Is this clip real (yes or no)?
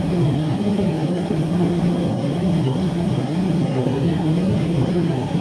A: no